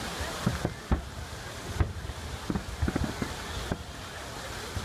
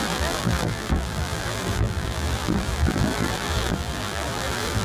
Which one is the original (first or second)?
first